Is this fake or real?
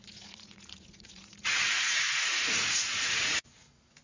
fake